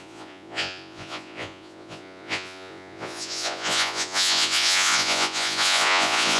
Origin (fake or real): fake